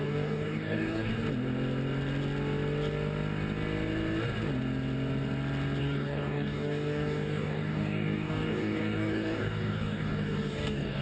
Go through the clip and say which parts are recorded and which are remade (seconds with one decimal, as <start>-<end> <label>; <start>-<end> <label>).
0.0-1.1 remade; 1.1-5.8 recorded; 5.8-11.0 remade